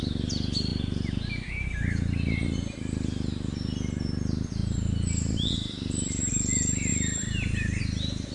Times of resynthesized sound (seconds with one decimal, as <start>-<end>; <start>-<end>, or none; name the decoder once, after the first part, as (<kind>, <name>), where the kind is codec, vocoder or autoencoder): 4.6-6.3 (vocoder, BigVGAN v2); 6.9-7.8